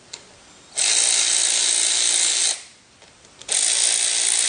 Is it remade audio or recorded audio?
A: recorded